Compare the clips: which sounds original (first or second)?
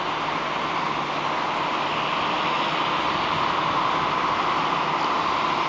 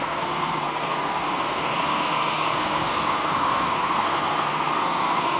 first